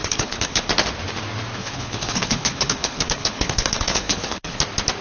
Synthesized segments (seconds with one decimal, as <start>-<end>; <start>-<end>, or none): 0.0-0.7; 1.6-4.6